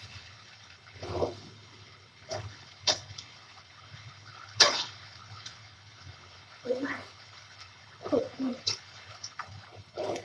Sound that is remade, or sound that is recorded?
remade